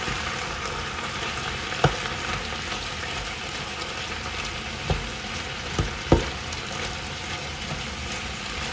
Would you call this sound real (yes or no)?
yes